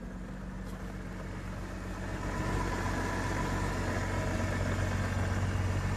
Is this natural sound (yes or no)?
yes